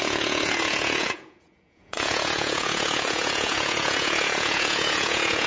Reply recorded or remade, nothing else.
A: remade